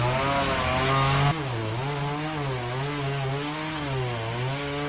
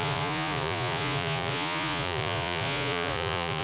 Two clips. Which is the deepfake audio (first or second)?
second